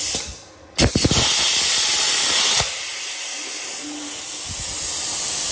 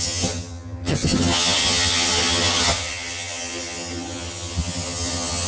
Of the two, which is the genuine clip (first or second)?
first